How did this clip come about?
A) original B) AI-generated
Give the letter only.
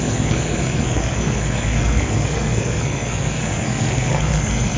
B